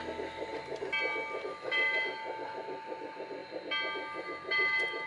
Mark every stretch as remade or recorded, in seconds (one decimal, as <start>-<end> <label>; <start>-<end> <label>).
0.0-5.1 recorded